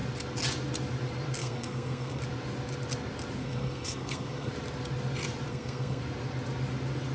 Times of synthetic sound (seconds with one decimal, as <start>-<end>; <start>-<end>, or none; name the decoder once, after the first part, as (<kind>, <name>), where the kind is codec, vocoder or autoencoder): 1.4-2.2 (codec, SNAC); 3.4-4.5; 5.5-6.0